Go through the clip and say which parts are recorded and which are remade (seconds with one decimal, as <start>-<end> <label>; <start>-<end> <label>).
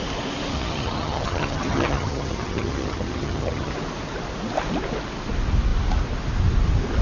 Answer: 0.0-0.5 recorded; 0.5-3.7 remade; 3.7-7.0 recorded